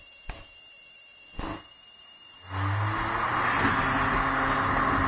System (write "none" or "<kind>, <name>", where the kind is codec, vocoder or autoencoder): none